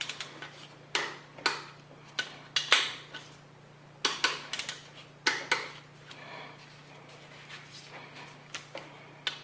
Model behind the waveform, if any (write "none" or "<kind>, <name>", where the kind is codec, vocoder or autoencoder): none